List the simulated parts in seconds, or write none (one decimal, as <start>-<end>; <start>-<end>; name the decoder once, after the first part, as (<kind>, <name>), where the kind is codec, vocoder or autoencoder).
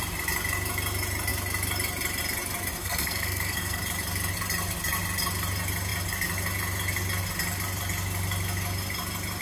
2.8-3.8 (codec, SNAC)